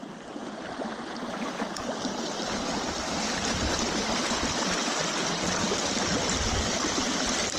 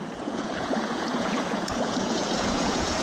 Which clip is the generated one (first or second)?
second